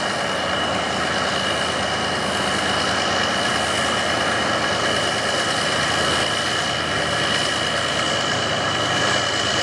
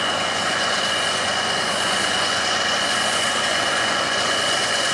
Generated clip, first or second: second